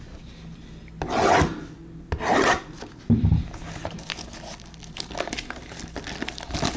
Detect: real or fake real